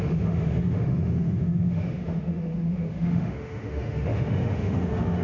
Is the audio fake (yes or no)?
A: yes